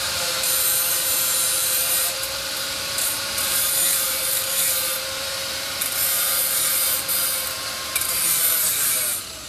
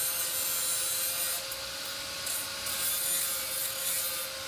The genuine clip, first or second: second